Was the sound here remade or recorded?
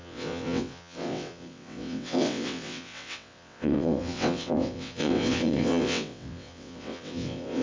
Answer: remade